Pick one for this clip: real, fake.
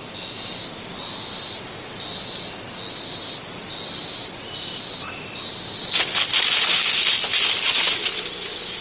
real